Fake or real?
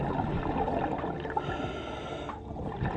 real